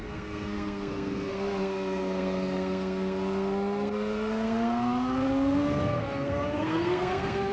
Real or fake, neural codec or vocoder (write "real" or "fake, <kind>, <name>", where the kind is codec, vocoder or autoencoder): fake, codec, SNAC